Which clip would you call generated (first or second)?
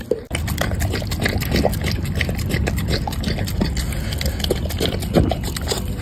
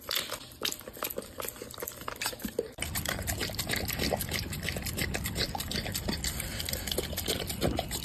second